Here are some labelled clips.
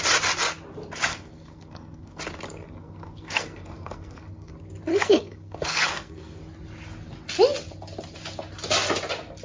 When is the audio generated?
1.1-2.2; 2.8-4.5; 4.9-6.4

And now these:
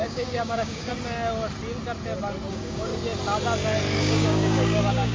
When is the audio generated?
0.0-0.9; 2.5-2.9; 4.0-5.1

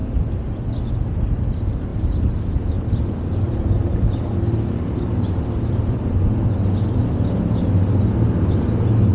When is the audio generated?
1.9-6.2